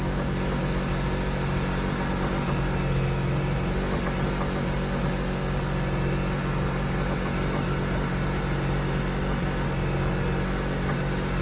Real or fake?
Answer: real